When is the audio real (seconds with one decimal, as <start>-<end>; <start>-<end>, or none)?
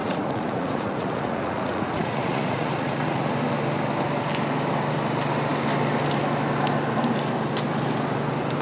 3.3-8.6